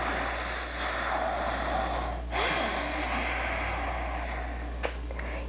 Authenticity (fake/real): real